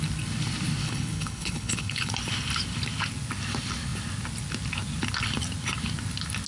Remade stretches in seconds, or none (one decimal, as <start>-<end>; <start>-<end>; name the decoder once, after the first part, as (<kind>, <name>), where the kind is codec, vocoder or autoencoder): 0.8-2.1 (codec, HILCodec)